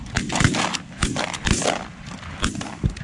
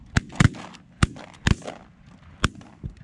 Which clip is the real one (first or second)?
second